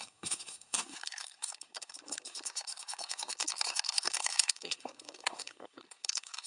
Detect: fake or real fake